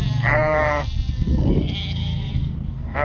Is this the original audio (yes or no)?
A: no